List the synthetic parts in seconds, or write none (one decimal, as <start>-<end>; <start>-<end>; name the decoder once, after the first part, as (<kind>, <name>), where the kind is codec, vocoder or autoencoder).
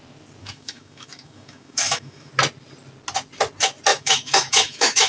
0.4-2.3 (autoencoder, DAC-VAE); 3.9-5.1